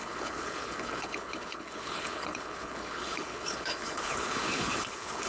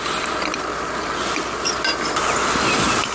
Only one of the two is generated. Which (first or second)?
first